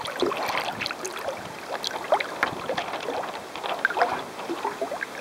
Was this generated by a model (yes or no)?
no